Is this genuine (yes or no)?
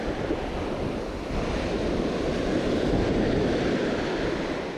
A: yes